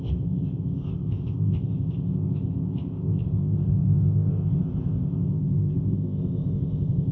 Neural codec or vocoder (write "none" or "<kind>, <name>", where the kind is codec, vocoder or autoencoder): codec, ZipCodec